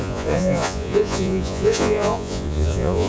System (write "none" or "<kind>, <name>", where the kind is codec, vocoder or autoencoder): vocoder, Vocos